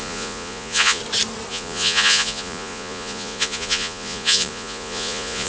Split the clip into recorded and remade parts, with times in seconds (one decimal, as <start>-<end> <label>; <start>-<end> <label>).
0.0-1.0 remade; 1.0-1.5 recorded; 1.5-5.5 remade